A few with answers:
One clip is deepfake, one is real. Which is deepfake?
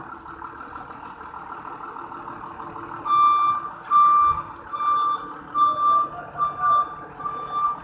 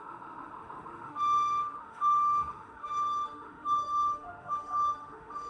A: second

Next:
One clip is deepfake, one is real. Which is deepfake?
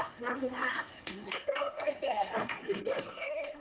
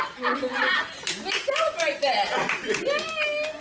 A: first